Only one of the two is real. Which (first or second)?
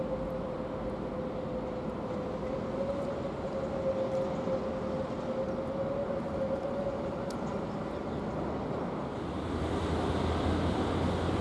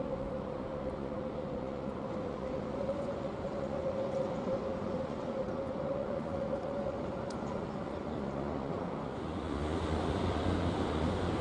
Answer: first